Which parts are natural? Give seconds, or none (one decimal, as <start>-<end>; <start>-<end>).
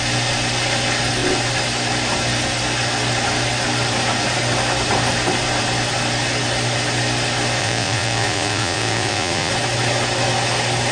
0.0-7.6; 9.5-10.9